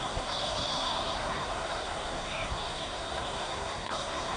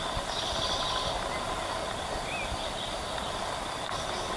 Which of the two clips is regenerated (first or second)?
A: first